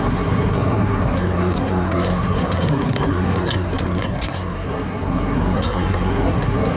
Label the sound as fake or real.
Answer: fake